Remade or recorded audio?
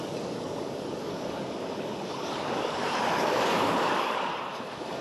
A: remade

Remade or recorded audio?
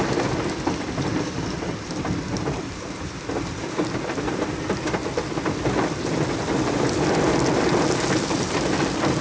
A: recorded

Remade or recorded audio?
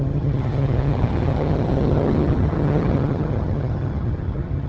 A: remade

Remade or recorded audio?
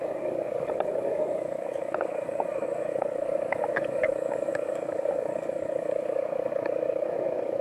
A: remade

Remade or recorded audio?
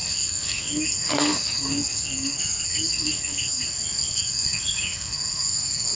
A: remade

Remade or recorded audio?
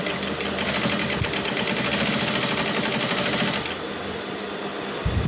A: recorded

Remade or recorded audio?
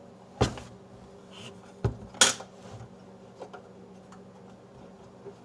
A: recorded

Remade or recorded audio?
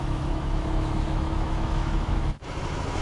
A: remade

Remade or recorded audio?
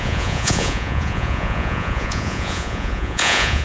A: remade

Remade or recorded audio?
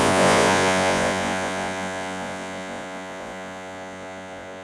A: remade